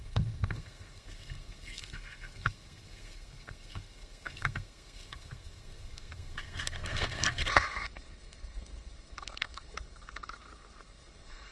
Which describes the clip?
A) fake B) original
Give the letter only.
A